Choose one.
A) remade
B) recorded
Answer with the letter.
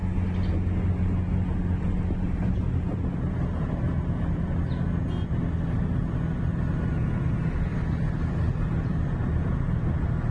B